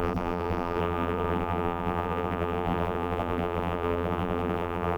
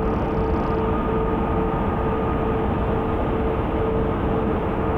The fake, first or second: first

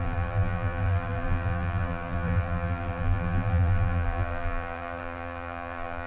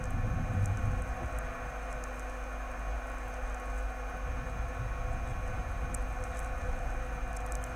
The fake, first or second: first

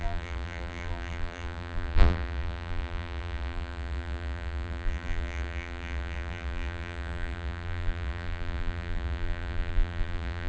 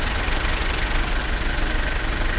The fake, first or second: first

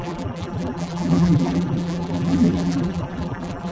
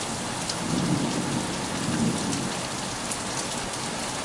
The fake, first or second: first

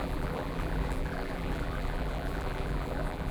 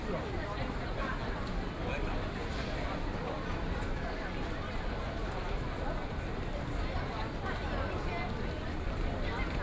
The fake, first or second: first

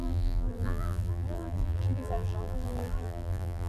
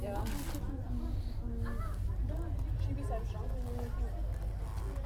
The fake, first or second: first